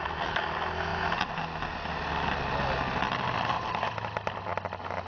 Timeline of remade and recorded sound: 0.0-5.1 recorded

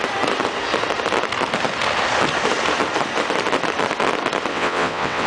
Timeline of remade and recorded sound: 0.0-4.5 recorded; 4.5-5.3 remade

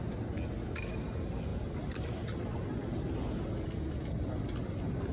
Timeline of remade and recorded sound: 0.0-1.5 recorded; 1.5-3.1 remade; 3.1-5.1 recorded

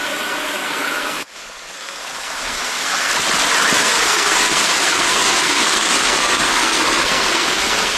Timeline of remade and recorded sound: 0.0-3.1 remade; 3.1-3.8 recorded; 3.8-8.0 remade

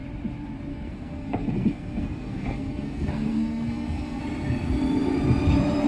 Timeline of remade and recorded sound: 0.0-0.7 recorded; 0.7-4.2 remade; 4.2-5.9 recorded

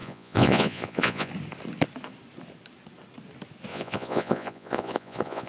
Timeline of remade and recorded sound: 0.0-1.3 remade; 1.3-3.7 recorded; 3.7-5.5 remade

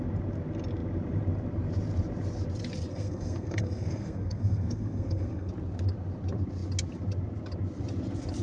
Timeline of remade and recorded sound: 0.0-2.9 recorded; 2.9-5.5 remade; 5.5-8.4 recorded